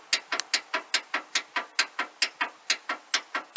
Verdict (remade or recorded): recorded